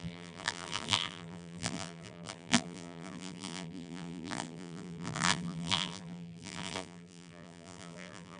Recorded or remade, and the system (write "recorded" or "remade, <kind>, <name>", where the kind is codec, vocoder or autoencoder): remade, vocoder, BigVGAN v2